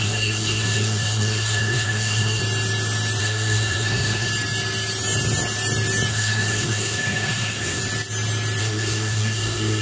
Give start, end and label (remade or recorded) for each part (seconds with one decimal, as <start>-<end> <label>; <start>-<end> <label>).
0.0-2.4 remade; 2.4-3.2 recorded; 3.2-4.3 remade; 4.3-6.1 recorded; 6.1-7.8 remade; 7.8-8.6 recorded; 8.6-9.8 remade